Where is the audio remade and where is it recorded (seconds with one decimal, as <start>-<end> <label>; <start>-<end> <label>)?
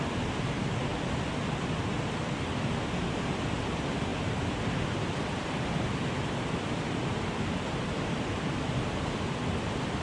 0.0-4.1 recorded; 4.1-6.4 remade; 6.4-10.0 recorded